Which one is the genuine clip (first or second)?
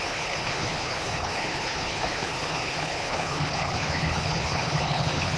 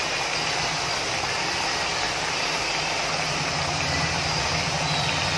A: second